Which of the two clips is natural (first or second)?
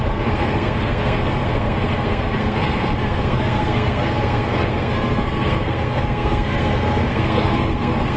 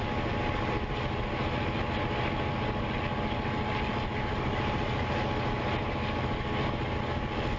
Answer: second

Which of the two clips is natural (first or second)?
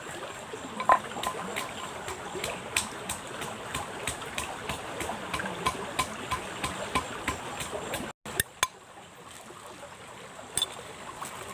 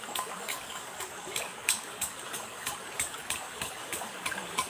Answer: first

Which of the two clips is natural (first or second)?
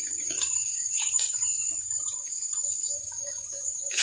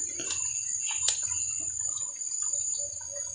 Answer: second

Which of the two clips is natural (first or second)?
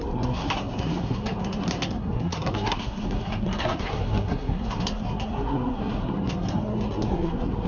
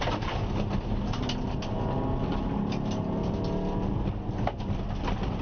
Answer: second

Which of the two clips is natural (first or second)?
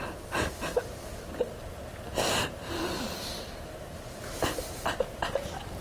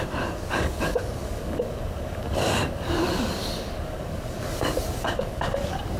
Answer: first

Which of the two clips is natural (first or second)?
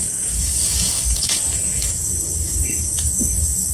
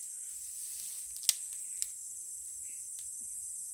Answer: second